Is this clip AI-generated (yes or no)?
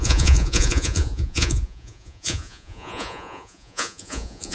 yes